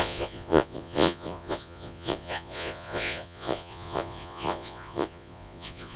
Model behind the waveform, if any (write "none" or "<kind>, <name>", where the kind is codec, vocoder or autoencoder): vocoder, Vocos